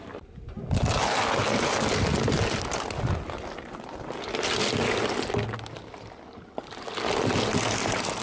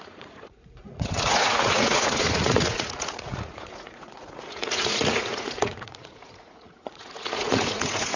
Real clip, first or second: first